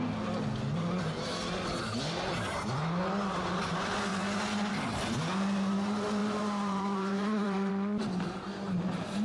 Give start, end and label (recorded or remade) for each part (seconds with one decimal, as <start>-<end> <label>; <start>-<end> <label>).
0.0-6.2 recorded; 6.2-7.7 remade; 7.7-9.2 recorded